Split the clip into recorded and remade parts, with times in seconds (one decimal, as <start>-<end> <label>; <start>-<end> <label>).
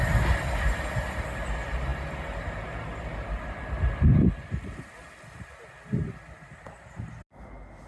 0.0-7.9 recorded